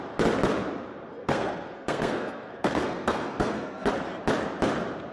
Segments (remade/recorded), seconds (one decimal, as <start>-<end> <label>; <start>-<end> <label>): 0.0-1.2 recorded; 1.2-3.9 remade; 3.9-5.1 recorded